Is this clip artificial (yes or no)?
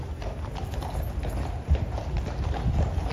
no